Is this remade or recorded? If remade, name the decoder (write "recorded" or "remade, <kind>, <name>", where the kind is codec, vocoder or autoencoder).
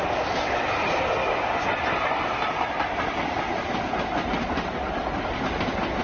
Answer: recorded